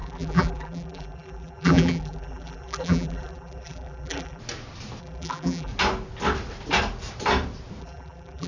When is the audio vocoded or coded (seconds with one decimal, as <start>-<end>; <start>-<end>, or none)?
0.0-4.4; 5.0-5.7; 7.8-8.5